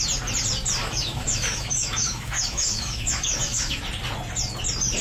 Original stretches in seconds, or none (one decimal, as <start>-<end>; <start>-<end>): 0.0-0.8; 3.8-5.0